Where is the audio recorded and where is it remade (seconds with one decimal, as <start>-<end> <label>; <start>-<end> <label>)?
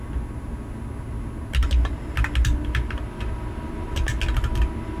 0.0-1.6 recorded; 1.6-4.6 remade; 4.6-5.0 recorded